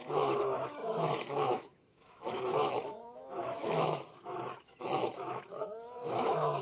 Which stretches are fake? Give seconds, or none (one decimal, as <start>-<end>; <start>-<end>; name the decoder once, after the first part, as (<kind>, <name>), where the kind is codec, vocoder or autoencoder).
0.0-6.6 (autoencoder, DAC-VAE)